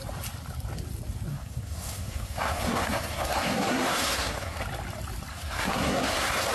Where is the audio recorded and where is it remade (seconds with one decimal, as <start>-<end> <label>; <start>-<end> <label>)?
0.0-1.3 recorded; 1.3-4.6 remade; 4.6-5.3 recorded; 5.3-6.5 remade

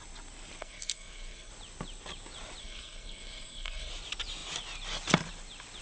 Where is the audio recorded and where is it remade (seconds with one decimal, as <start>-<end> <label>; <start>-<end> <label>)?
0.0-0.6 recorded; 0.6-1.5 remade; 1.5-2.6 recorded; 2.6-3.9 remade; 3.9-5.8 recorded

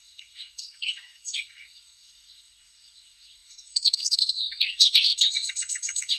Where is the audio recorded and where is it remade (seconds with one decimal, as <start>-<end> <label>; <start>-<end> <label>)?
0.0-6.2 remade

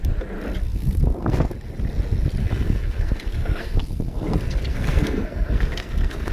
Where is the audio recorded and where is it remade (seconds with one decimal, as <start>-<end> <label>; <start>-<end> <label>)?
0.0-0.7 recorded; 0.7-1.5 remade; 1.5-2.4 recorded; 2.4-6.3 remade

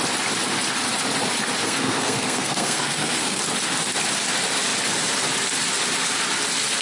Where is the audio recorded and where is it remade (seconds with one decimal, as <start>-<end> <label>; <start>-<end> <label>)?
0.0-1.6 recorded; 1.6-3.4 remade; 3.4-6.8 recorded

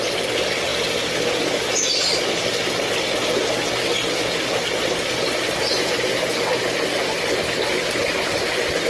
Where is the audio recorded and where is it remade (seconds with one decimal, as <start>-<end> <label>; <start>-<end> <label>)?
0.0-8.9 recorded